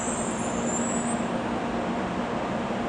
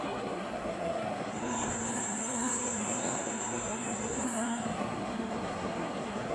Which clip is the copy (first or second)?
second